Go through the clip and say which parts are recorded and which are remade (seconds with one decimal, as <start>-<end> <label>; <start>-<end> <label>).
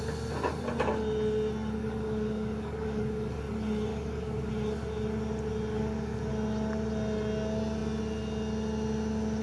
0.0-1.8 recorded; 1.8-3.4 remade; 3.4-3.9 recorded; 3.9-4.5 remade; 4.5-5.7 recorded; 5.7-6.3 remade; 6.3-9.4 recorded